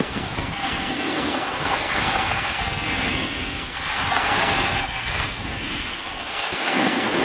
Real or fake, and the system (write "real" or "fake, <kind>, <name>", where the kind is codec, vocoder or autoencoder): fake, codec, SNAC